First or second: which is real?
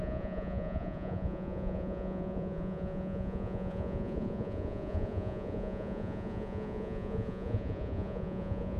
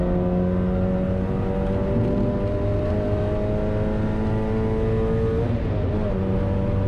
second